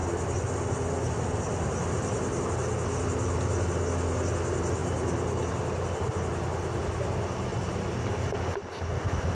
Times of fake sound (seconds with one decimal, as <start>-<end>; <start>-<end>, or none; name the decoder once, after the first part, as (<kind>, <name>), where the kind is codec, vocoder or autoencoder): 4.8-5.5 (vocoder, BigVGAN v2); 7.5-8.3